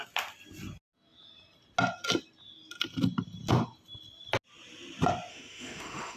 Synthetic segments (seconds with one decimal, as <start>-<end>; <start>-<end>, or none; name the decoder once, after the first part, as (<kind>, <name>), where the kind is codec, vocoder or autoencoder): 5.3-6.2 (autoencoder, DAC-VAE)